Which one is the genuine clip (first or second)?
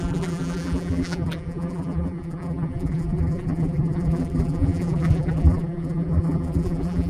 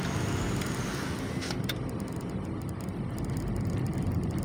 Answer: second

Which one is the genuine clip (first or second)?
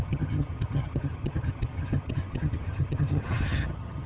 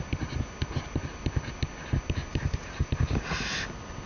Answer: second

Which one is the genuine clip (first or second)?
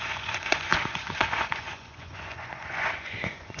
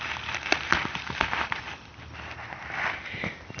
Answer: second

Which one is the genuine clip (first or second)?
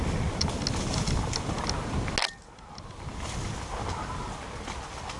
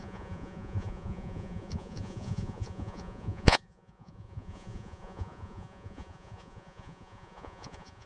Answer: first